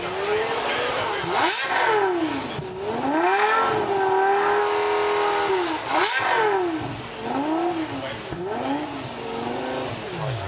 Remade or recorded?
recorded